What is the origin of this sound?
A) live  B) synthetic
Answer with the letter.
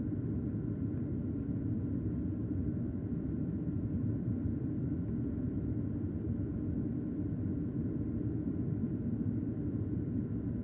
B